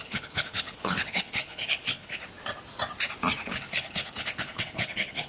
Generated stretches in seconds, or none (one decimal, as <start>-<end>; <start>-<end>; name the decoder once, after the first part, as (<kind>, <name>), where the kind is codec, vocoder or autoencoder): 0.0-2.3 (codec, HILCodec); 3.4-5.3